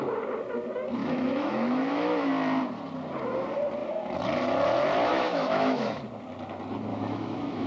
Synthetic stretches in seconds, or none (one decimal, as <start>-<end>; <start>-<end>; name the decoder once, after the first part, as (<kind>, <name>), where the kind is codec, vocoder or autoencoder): 1.0-2.3 (autoencoder, DAC-VAE); 5.1-6.0; 6.9-7.7